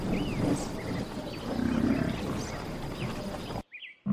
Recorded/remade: recorded